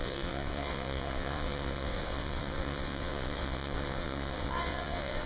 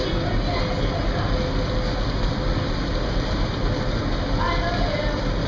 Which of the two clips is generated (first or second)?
first